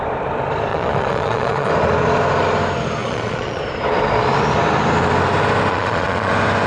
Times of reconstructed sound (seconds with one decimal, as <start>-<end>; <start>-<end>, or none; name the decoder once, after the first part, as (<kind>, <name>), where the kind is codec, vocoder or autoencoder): 0.7-1.7 (vocoder, Vocos); 3.0-3.6; 5.7-6.3